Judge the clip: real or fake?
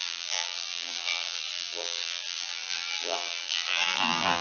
fake